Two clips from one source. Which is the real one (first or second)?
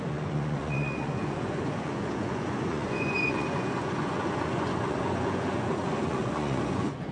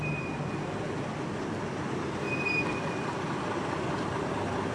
second